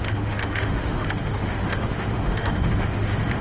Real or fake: fake